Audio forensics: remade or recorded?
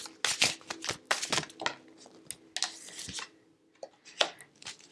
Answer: recorded